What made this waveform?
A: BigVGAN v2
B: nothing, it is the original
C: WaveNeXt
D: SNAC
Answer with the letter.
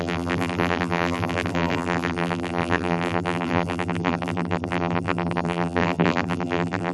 A